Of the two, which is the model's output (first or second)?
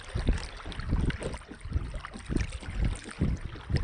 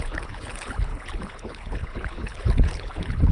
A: second